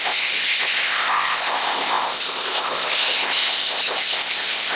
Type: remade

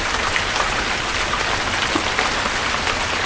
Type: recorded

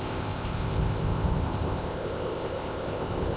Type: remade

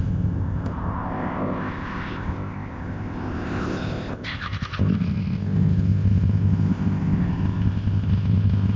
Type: remade